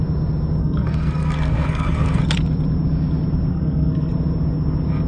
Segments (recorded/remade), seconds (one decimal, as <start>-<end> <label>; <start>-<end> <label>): 0.0-0.6 recorded; 0.6-2.2 remade; 2.2-3.5 recorded; 3.5-4.1 remade; 4.1-5.1 recorded